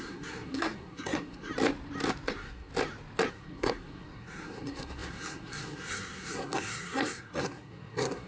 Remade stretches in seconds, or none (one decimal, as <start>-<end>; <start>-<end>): 0.0-1.5; 2.3-2.7; 3.3-8.3